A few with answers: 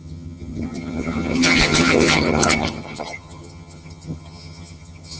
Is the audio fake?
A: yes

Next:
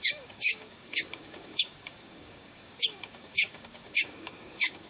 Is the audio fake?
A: yes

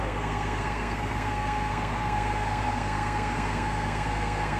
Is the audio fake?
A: yes